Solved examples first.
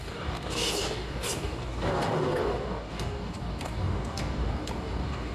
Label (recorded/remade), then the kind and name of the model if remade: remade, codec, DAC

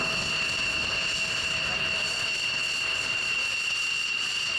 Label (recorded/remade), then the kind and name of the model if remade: recorded